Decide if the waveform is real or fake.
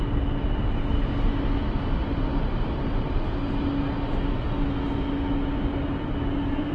real